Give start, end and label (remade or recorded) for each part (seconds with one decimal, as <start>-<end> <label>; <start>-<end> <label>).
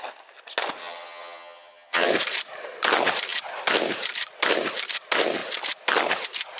0.0-0.8 recorded; 0.8-2.1 remade; 2.1-6.6 recorded